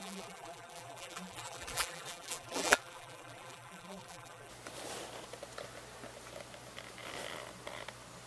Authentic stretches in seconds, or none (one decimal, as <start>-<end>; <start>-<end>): 4.5-8.3